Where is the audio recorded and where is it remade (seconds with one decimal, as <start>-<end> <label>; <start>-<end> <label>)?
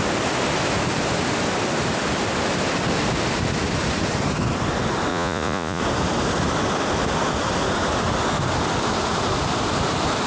0.0-5.1 recorded; 5.1-5.8 remade; 5.8-10.3 recorded